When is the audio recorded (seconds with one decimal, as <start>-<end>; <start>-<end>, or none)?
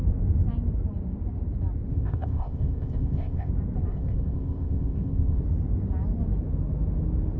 0.0-1.9; 3.5-3.9; 5.4-7.4